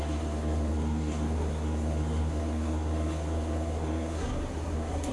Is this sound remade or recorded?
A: remade